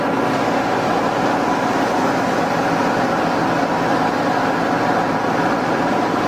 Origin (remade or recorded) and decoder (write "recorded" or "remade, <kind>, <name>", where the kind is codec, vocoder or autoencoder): recorded